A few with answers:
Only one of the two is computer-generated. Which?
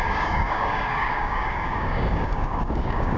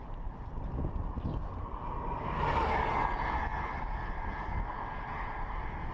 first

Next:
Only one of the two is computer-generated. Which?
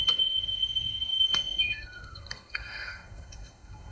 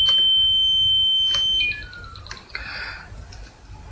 first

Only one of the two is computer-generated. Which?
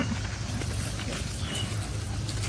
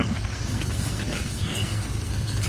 second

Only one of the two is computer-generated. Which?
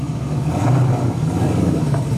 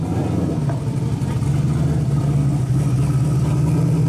first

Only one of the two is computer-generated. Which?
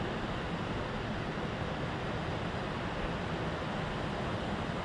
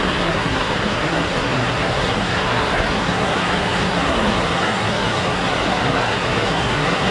second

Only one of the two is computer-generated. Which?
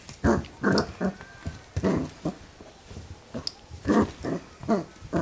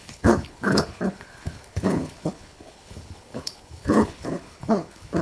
second